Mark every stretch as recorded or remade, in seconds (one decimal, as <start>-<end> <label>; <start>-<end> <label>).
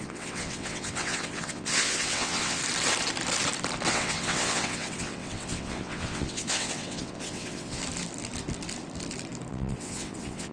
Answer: 0.0-2.6 remade; 2.6-3.9 recorded; 3.9-7.8 remade; 7.8-9.5 recorded; 9.5-10.5 remade